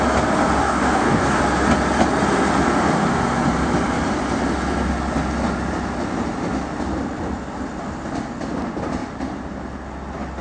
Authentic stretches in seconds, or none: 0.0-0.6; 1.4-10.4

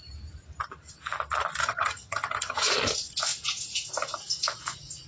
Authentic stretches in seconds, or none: 0.0-1.6; 2.7-5.1